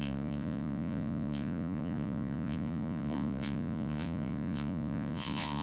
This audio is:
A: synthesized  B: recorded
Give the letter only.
A